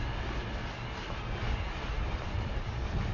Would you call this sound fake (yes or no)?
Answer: no